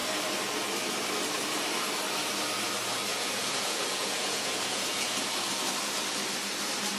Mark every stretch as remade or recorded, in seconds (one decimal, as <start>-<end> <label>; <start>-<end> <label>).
0.0-3.1 recorded; 3.1-5.3 remade; 5.3-7.0 recorded